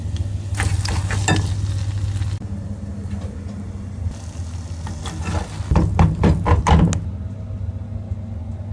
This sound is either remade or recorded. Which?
recorded